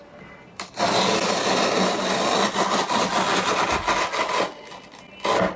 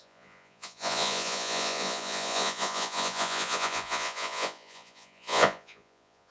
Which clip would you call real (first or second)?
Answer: first